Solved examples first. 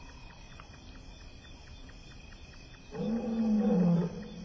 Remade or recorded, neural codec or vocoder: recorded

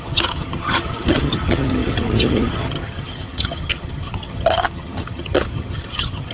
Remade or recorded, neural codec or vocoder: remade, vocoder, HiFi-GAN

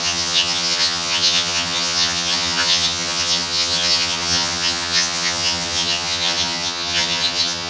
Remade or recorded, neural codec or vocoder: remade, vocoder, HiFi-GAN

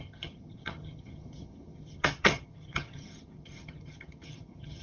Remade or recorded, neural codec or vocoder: remade, vocoder, HiFi-GAN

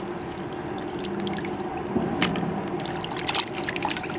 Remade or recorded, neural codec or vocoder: recorded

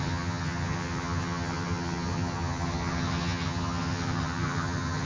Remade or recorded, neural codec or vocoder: remade, vocoder, HiFi-GAN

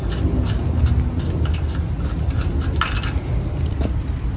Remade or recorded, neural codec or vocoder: recorded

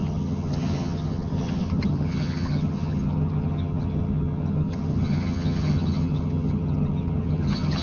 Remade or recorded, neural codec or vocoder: remade, vocoder, HiFi-GAN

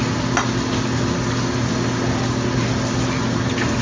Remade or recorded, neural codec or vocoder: recorded